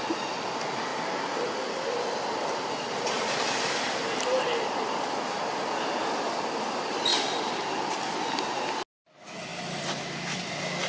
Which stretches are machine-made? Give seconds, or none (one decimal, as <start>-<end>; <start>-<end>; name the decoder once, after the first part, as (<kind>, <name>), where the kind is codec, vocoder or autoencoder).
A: none